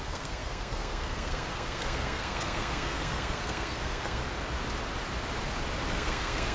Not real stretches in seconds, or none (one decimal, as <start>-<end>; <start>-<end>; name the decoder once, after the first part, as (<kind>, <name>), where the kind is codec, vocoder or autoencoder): 0.0-4.2 (codec, SNAC); 5.9-6.5